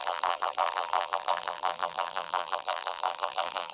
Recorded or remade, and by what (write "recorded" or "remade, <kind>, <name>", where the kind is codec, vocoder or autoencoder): remade, vocoder, BigVGAN v2